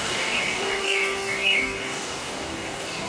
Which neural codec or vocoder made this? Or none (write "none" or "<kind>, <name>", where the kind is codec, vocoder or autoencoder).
codec, DAC